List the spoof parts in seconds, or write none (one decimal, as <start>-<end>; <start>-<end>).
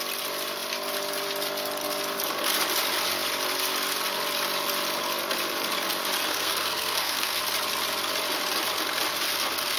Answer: 6.3-7.4